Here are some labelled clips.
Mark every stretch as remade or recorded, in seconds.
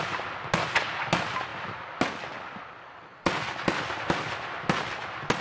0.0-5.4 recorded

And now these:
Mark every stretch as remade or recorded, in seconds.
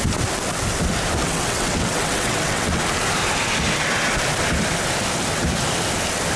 0.0-1.2 recorded; 1.2-2.8 remade; 2.8-6.4 recorded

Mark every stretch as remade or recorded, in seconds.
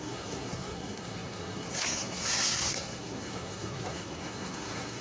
0.0-5.0 remade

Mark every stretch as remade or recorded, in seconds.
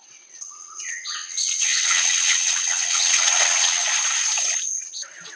0.0-3.8 remade; 3.8-4.8 recorded; 4.8-5.4 remade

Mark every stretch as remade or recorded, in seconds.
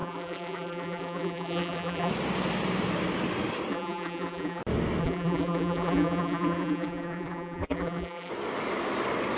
0.0-2.1 remade; 2.1-3.7 recorded; 3.7-4.6 remade; 4.6-5.0 recorded; 5.0-8.3 remade; 8.3-9.4 recorded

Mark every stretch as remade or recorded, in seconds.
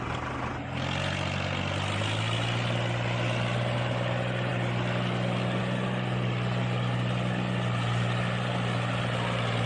0.0-9.7 recorded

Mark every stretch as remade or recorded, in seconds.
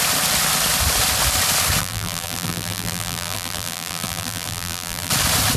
0.0-1.8 recorded; 1.8-5.1 remade; 5.1-5.6 recorded